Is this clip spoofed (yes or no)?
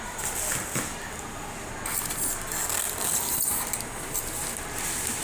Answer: no